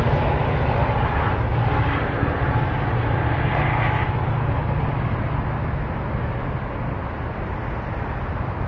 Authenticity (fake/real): real